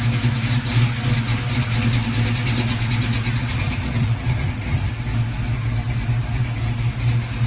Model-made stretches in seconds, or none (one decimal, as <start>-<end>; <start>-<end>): 3.4-4.9